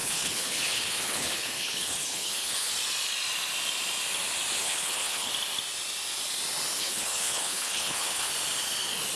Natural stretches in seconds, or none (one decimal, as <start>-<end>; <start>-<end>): 2.7-4.6; 5.3-6.8; 8.3-9.2